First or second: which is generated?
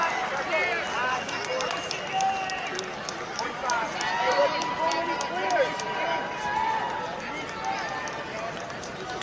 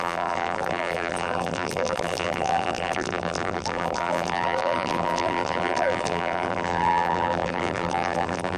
second